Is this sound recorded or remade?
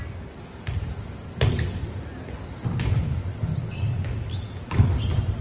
recorded